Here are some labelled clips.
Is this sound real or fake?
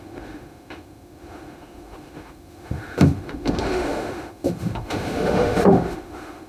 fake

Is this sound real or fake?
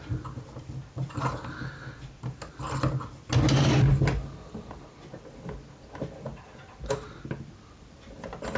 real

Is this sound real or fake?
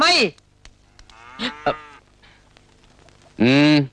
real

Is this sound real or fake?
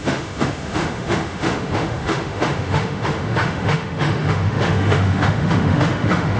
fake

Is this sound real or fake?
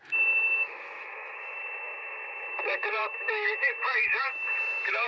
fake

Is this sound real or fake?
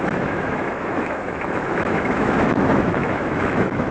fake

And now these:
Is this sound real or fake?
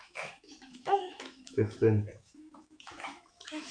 fake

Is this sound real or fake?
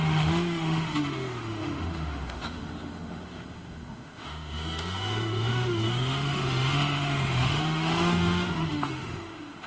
fake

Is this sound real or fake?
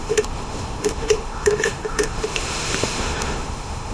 fake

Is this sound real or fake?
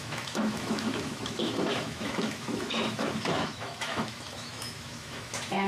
fake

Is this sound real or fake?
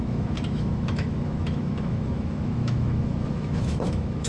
fake